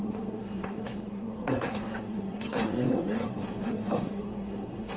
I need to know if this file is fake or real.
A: fake